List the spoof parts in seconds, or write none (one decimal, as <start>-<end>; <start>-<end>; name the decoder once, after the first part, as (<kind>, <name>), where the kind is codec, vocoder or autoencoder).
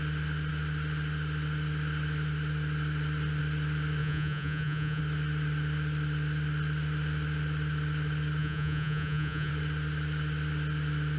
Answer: 4.0-5.0 (vocoder, Vocos); 8.4-9.5